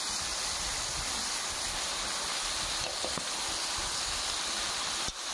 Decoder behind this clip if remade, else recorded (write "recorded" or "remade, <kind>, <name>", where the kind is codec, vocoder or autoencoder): recorded